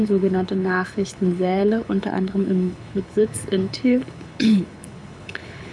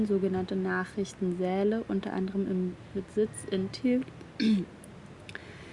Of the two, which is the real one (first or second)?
second